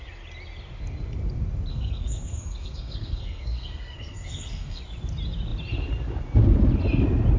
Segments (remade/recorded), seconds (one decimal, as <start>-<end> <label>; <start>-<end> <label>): 0.0-1.7 recorded; 1.7-4.8 remade; 4.8-7.4 recorded